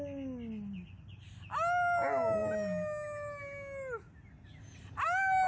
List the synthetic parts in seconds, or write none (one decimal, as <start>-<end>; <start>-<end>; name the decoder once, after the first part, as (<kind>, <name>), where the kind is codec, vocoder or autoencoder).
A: none